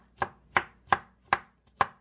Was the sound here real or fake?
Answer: real